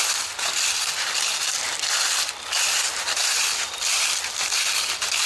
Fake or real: real